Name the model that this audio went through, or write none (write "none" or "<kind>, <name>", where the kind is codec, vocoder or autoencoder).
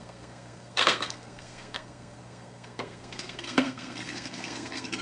codec, SNAC